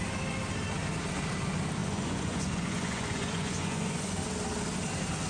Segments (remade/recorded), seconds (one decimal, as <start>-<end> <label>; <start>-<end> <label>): 0.0-1.8 recorded; 1.8-4.2 remade; 4.2-5.3 recorded